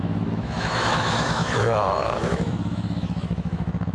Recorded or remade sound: remade